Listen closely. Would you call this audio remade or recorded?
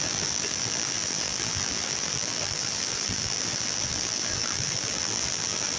remade